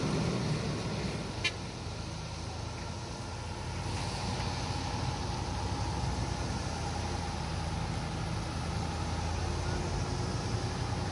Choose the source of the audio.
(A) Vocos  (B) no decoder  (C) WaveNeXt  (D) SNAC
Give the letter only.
B